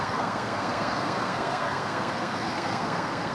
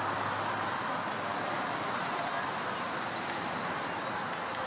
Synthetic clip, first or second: first